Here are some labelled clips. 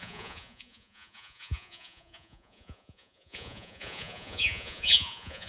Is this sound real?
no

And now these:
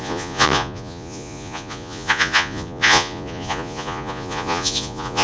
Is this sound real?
no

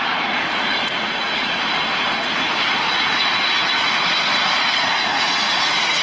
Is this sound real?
no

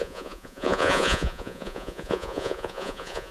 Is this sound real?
no